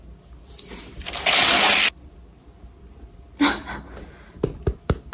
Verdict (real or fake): real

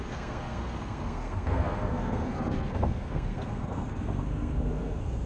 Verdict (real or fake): fake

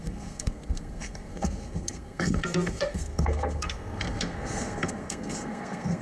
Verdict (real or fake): fake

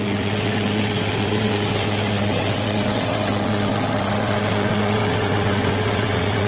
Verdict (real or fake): fake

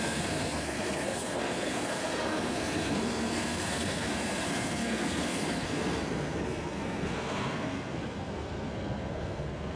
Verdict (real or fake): fake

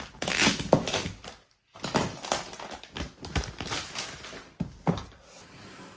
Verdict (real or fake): real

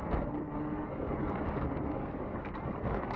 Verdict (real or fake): fake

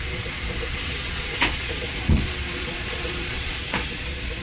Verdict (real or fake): fake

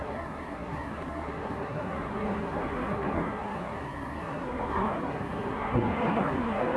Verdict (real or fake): fake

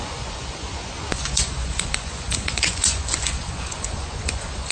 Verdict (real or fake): fake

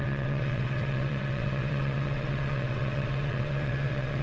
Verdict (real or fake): fake